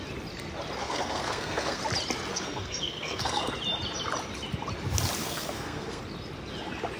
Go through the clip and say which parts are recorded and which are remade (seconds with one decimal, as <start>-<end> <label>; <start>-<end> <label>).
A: 0.0-0.8 recorded; 0.8-1.8 remade; 1.8-2.3 recorded; 2.3-3.5 remade; 3.5-5.2 recorded; 5.2-6.0 remade; 6.0-7.0 recorded